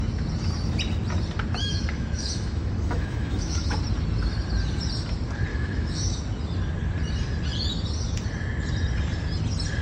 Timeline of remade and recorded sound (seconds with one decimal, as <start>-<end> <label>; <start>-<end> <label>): 0.0-1.6 recorded; 1.6-3.8 remade; 3.8-5.5 recorded; 5.5-6.2 remade; 6.2-9.8 recorded